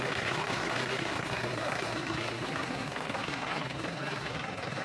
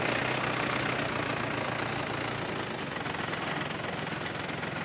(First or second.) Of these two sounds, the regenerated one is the first